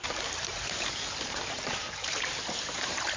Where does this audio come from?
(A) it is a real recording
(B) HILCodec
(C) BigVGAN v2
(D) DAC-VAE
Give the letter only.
C